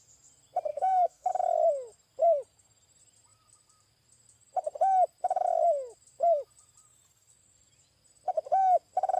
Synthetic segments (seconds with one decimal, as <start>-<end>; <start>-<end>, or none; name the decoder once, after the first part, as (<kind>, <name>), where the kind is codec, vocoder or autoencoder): 0.7-1.3 (codec, SNAC)